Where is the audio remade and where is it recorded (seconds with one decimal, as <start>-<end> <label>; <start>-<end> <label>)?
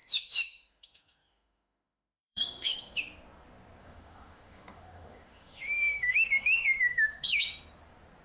0.0-3.0 remade; 3.0-3.8 recorded; 3.8-7.5 remade; 7.5-8.2 recorded